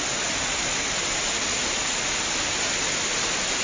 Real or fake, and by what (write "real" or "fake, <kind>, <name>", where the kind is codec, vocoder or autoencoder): real